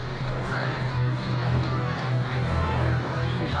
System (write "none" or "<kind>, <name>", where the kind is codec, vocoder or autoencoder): codec, DAC